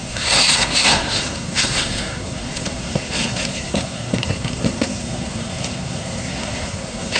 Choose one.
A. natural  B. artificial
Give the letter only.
B